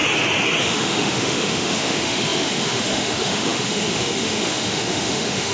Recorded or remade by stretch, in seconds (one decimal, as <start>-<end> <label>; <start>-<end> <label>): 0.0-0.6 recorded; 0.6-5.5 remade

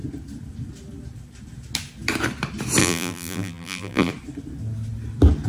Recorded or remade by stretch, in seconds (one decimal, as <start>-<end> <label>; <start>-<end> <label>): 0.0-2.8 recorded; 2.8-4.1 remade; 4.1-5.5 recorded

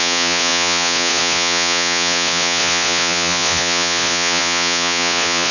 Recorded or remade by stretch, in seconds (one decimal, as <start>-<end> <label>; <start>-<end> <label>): 0.0-5.5 remade